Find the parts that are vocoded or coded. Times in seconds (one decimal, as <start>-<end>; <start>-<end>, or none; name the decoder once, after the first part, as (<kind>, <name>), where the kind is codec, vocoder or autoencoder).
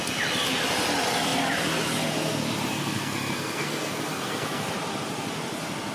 2.7-4.7 (codec, SNAC)